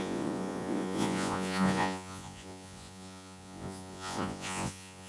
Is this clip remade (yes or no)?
yes